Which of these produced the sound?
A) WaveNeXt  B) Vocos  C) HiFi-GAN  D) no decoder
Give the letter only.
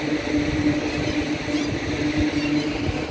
D